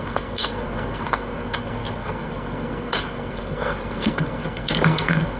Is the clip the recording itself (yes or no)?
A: no